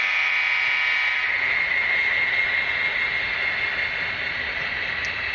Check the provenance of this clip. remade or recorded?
recorded